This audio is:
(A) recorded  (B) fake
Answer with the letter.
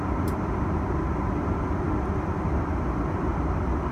A